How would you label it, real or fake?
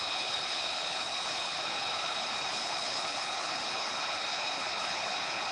fake